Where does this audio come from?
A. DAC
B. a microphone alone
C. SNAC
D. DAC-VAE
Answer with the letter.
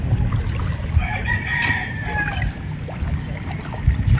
B